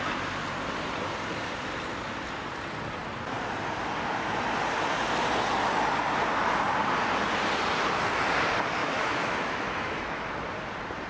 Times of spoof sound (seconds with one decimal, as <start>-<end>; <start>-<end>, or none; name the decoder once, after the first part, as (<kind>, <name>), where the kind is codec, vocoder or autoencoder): 8.8-10.3 (autoencoder, DAC-VAE)